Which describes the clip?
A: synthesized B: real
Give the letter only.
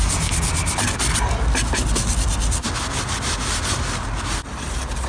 B